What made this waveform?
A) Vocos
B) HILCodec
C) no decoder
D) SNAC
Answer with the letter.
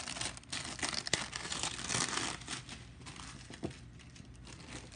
C